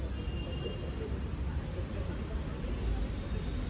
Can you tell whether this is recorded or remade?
recorded